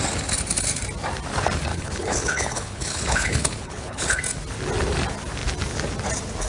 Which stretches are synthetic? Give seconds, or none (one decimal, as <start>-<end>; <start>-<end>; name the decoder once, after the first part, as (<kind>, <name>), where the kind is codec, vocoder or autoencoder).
1.7-4.2 (codec, HILCodec)